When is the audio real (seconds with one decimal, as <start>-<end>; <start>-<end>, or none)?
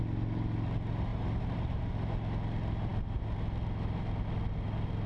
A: 0.0-1.1; 1.9-5.1